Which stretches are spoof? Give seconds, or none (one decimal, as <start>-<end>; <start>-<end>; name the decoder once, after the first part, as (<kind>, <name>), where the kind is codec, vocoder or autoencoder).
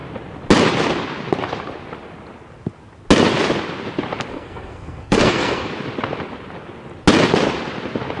4.3-5.7 (codec, SNAC)